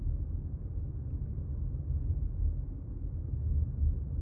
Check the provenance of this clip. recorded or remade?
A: recorded